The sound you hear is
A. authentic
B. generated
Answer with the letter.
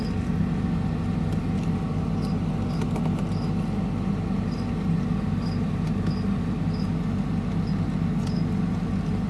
A